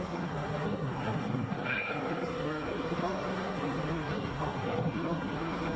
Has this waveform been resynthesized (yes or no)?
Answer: yes